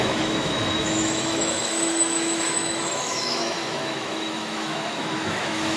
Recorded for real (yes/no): no